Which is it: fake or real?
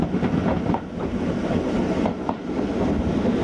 real